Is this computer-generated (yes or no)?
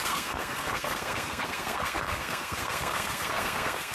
yes